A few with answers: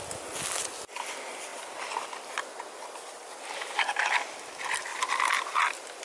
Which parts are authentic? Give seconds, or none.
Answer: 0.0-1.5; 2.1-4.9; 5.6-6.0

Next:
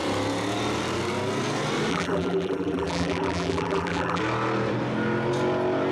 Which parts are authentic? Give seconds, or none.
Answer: 0.0-1.9; 4.2-5.9

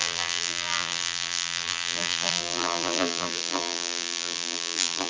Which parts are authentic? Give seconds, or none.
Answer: none

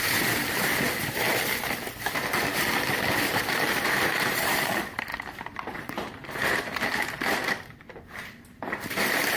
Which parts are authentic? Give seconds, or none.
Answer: 0.7-3.2

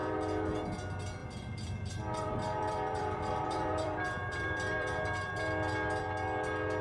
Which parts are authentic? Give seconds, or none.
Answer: 0.0-1.2; 5.3-6.8

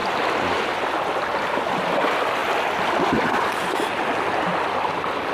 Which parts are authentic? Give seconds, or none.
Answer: 0.0-5.3